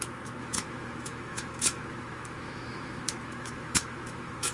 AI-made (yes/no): yes